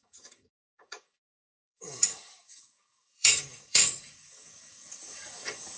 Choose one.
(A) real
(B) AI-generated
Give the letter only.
B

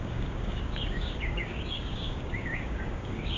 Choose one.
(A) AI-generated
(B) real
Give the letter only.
A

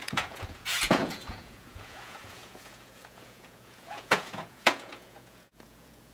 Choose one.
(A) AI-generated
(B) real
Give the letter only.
A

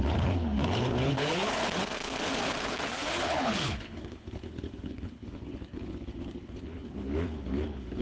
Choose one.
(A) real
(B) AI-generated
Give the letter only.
B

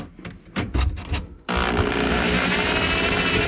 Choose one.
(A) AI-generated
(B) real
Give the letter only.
B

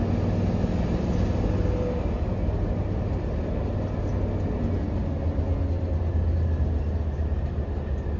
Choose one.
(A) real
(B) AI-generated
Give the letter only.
A